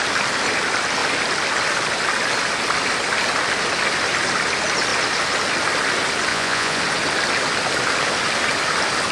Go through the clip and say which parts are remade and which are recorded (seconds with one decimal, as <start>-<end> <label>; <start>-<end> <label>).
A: 0.0-6.3 recorded; 6.3-6.8 remade; 6.8-9.1 recorded